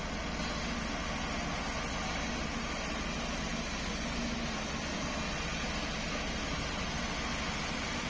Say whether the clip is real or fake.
real